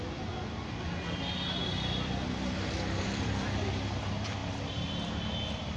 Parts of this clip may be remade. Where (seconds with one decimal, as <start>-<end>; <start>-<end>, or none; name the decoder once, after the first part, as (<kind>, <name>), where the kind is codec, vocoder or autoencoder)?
1.6-3.3 (vocoder, BigVGAN v2)